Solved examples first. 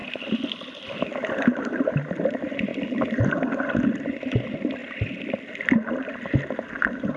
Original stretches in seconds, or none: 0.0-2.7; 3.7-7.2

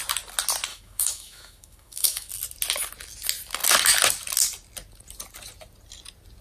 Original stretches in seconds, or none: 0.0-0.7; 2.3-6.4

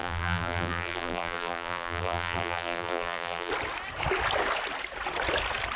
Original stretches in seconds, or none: 3.5-5.8

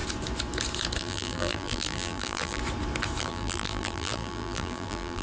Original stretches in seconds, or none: 0.0-1.0; 2.6-3.2

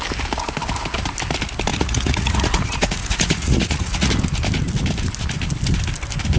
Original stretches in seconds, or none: 0.0-1.7; 4.1-6.4

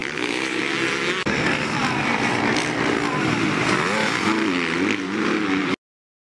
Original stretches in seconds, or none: 0.6-6.3